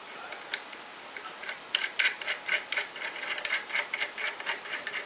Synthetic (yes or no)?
no